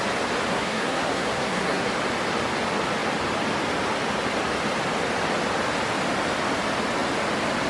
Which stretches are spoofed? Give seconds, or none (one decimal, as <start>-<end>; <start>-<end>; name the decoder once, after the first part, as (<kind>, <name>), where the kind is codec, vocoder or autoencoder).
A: 0.5-1.9 (codec, SNAC)